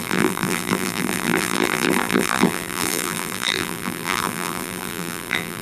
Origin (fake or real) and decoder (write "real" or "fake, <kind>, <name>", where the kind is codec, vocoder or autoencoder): fake, vocoder, BigVGAN v2